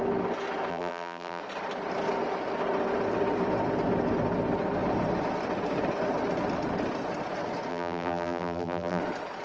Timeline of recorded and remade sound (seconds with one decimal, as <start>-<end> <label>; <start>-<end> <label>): 0.0-0.7 recorded; 0.7-1.4 remade; 1.4-7.7 recorded; 7.7-9.0 remade; 9.0-9.4 recorded